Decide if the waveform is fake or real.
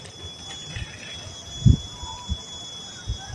real